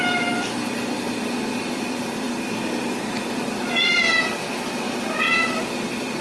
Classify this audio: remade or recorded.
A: recorded